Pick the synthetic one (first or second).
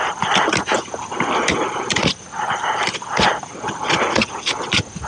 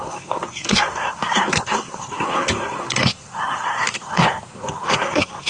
second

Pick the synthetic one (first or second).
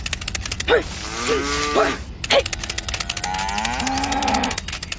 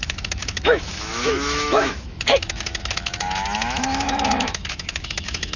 second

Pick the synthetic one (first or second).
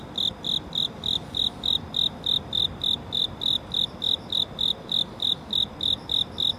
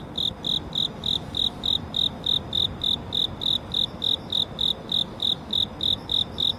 first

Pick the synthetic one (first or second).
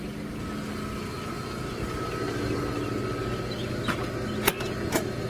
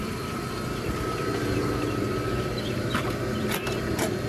second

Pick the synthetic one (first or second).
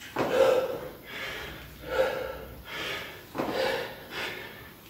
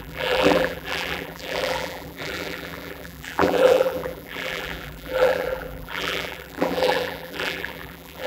second